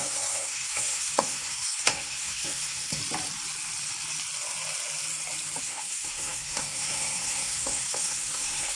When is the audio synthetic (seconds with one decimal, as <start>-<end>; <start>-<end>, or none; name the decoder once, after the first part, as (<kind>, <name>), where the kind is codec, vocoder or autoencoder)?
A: 0.0-3.0 (codec, SNAC); 5.6-8.7